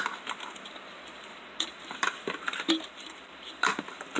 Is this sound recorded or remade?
remade